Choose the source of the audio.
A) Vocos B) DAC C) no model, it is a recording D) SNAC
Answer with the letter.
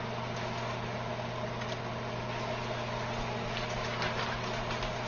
C